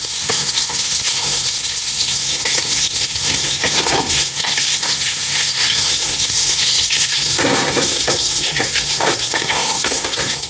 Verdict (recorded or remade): remade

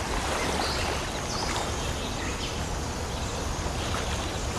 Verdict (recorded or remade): recorded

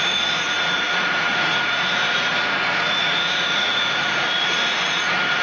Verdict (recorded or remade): remade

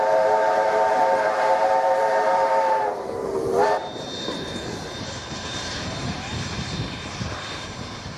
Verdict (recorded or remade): remade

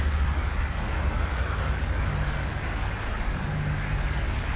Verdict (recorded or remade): remade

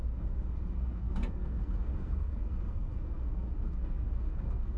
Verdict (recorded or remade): remade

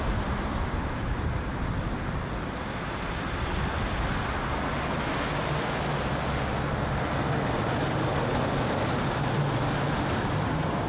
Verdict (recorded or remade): recorded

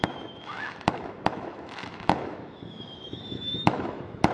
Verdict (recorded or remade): remade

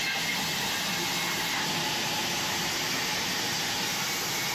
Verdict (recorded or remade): recorded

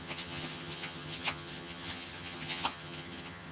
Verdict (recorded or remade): remade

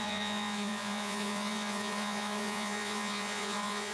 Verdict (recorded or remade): remade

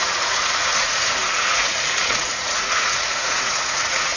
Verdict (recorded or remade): remade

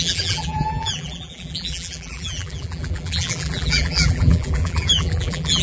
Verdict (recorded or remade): remade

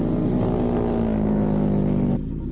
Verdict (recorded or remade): recorded